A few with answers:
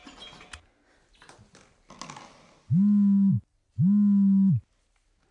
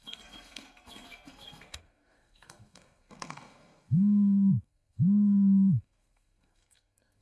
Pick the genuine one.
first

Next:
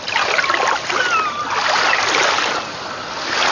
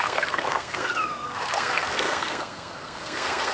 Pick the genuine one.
first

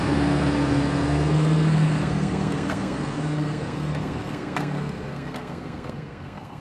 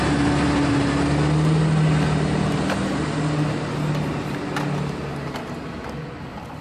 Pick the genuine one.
second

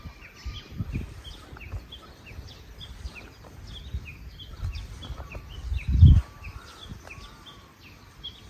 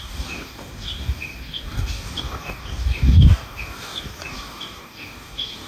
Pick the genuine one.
first